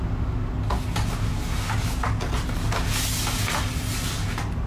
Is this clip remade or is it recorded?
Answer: recorded